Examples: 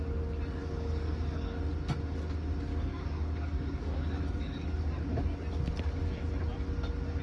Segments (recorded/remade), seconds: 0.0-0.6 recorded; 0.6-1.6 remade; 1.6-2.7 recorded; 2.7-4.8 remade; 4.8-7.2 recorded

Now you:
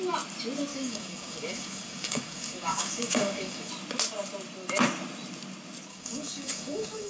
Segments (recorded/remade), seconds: 0.0-0.7 recorded; 0.7-3.7 remade; 3.7-5.9 recorded; 5.9-7.1 remade

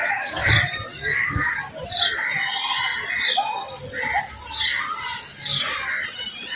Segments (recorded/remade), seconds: 0.0-0.5 remade; 0.5-0.9 recorded; 0.9-1.5 remade; 1.5-6.5 recorded

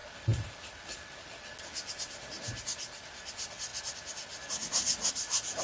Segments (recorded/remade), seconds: 0.0-5.6 recorded

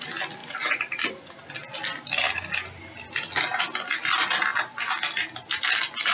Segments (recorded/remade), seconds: 0.0-6.1 recorded

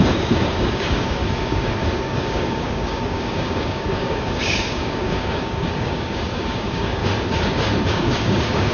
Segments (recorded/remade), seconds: 0.0-7.0 remade; 7.0-7.9 recorded; 7.9-8.7 remade

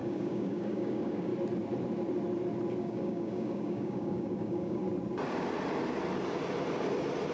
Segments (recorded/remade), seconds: 0.0-1.3 remade; 1.3-2.8 recorded; 2.8-4.8 remade; 4.8-7.3 recorded

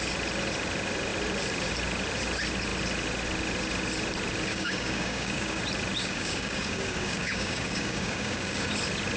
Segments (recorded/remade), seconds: 0.0-4.5 recorded; 4.5-5.6 remade; 5.6-6.0 recorded; 6.0-8.7 remade; 8.7-9.2 recorded